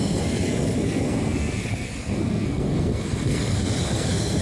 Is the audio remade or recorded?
remade